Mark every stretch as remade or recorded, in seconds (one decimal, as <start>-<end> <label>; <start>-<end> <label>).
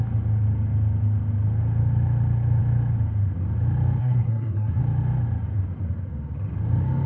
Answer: 0.0-4.0 recorded; 4.0-4.8 remade; 4.8-7.1 recorded